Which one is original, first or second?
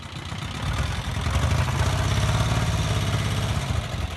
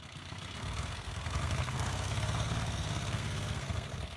first